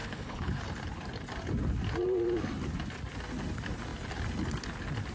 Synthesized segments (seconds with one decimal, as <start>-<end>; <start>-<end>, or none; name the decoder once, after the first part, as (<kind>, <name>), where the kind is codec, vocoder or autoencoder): 0.0-0.6 (codec, HILCodec)